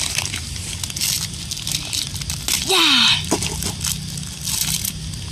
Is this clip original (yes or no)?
yes